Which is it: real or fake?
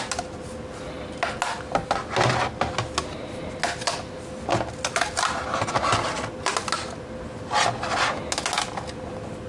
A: real